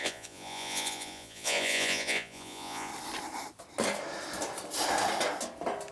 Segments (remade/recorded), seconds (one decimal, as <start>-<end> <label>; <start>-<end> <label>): 0.0-2.9 remade; 2.9-5.9 recorded